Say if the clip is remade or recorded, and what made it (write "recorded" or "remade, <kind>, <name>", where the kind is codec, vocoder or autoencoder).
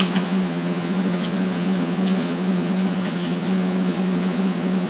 remade, vocoder, Vocos